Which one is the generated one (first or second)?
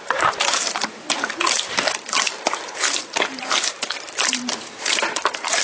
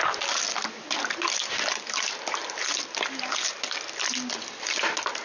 first